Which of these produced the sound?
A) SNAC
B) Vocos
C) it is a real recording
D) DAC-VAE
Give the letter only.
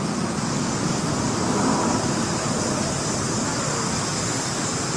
C